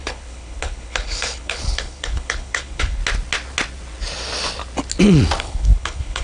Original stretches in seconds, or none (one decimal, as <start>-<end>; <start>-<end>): 3.0-5.4